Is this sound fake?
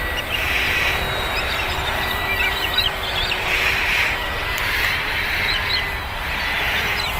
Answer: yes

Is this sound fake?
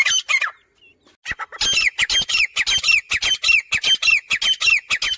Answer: no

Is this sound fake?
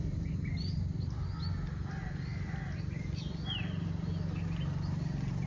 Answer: no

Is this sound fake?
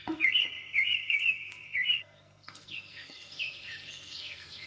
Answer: yes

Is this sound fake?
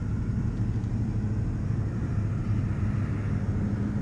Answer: no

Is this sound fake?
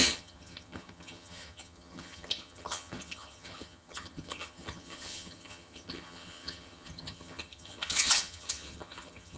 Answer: yes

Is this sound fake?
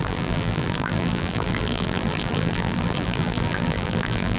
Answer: yes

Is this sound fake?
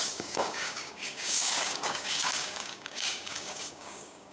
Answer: yes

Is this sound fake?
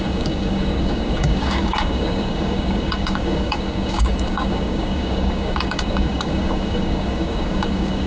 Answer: yes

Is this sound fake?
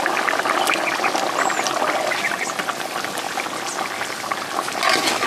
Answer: no